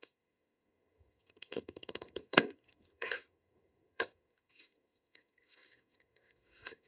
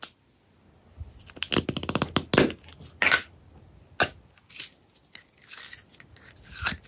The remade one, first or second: first